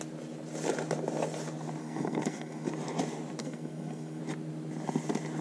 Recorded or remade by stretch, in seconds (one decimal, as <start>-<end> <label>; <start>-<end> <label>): 0.0-1.8 recorded; 1.8-2.7 remade; 2.7-3.4 recorded; 3.4-4.2 remade; 4.2-5.4 recorded